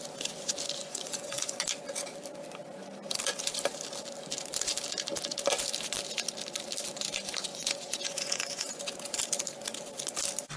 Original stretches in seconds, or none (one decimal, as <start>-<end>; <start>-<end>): 0.0-0.8; 1.6-7.5; 8.8-10.6

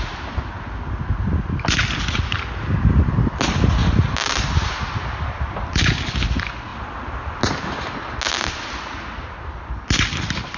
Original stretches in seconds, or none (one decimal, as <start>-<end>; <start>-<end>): 0.0-10.6

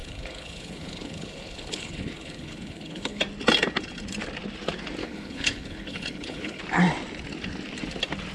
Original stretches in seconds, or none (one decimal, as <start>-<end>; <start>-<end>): 3.2-5.0; 6.6-8.3

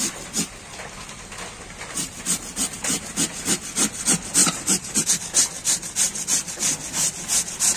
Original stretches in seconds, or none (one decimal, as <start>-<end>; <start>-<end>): 0.0-4.4; 5.1-7.8

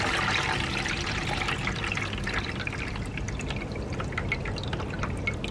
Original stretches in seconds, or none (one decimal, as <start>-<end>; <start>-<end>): 0.0-5.5

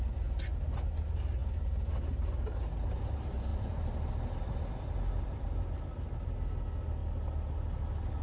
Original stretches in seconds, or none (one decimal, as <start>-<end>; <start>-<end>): 0.0-3.5; 5.8-8.2

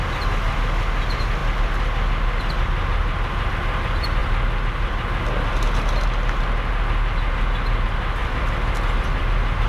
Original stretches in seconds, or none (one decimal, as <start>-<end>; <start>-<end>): 0.0-9.7

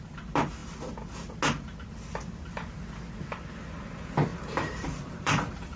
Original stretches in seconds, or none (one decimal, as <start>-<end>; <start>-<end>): 0.0-4.3